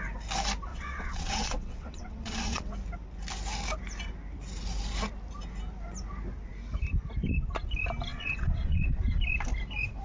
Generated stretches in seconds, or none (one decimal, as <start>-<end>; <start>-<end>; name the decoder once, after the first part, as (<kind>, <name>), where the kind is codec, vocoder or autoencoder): 0.7-2.7 (vocoder, WaveNeXt); 8.1-8.8